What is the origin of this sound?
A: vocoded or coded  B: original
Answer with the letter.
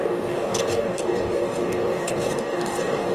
A